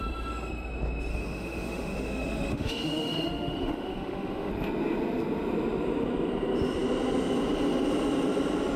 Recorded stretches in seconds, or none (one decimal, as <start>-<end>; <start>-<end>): 0.0-1.1; 4.5-8.8